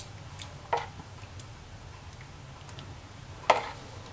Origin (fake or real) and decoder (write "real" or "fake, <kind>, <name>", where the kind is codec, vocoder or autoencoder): real